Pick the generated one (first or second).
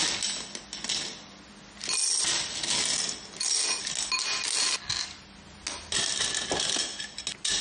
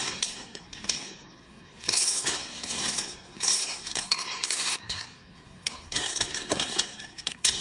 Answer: second